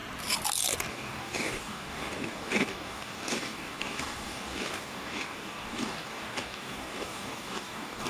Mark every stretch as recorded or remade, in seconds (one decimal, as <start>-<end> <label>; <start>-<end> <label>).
0.0-0.9 recorded; 0.9-8.1 remade